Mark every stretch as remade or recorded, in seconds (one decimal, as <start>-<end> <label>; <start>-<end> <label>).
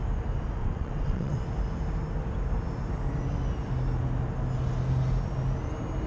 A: 0.0-0.6 recorded; 0.6-1.4 remade; 1.4-6.1 recorded